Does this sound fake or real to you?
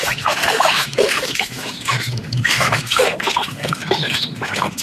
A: fake